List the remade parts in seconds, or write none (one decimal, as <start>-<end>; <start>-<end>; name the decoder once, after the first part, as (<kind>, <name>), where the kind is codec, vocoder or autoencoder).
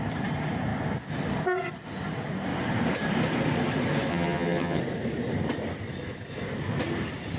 4.1-4.8 (vocoder, HiFi-GAN)